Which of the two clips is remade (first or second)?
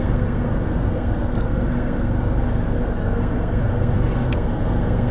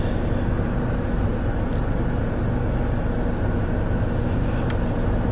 first